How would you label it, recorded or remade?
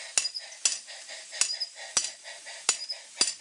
recorded